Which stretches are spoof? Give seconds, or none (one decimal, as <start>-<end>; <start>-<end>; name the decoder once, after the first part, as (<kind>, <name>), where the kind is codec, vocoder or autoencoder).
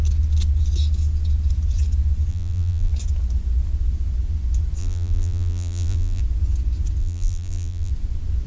2.3-2.9 (vocoder, BigVGAN v2); 4.8-6.2; 7.0-7.9